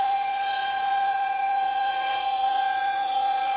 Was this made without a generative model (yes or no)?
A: no